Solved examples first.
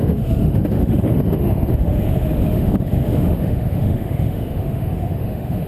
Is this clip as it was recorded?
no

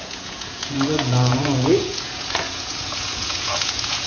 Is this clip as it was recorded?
no